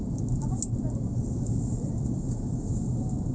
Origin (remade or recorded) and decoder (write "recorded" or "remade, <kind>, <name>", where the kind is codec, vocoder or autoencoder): recorded